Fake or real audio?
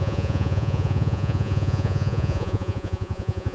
fake